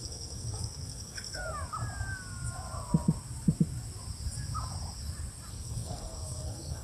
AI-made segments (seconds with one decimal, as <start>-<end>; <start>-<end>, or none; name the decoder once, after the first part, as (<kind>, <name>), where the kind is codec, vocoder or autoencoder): 0.0-1.4 (codec, SNAC); 5.5-6.8